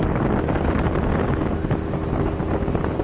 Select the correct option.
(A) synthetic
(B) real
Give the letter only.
B